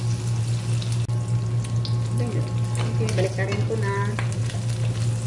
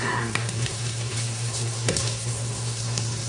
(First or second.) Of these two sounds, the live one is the first